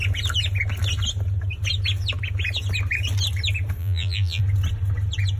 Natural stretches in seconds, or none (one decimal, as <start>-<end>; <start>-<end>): 0.0-3.8; 4.4-5.4